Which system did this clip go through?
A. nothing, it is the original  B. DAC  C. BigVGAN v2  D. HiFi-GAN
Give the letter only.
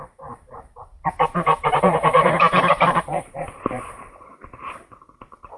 C